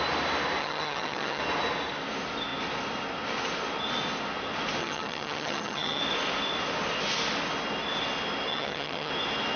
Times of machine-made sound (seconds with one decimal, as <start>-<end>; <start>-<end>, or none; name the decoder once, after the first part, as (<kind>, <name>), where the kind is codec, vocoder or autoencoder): 0.6-1.4 (vocoder, HiFi-GAN); 4.8-6.0; 8.5-9.1